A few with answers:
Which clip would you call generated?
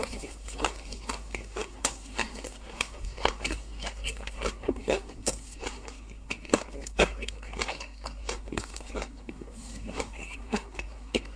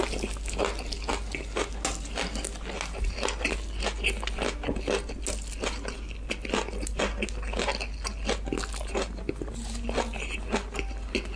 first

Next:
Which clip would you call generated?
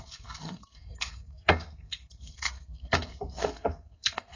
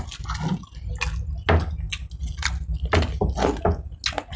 first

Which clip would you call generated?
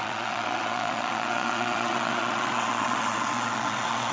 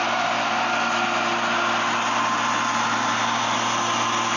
first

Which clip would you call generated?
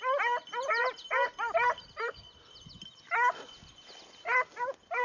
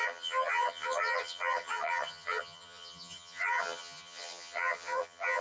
second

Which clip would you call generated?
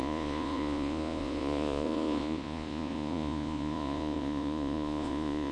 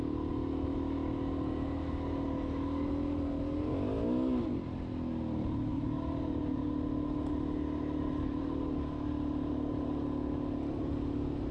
first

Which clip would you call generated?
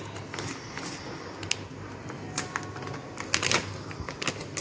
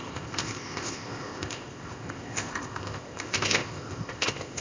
second